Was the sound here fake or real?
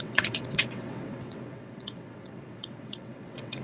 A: fake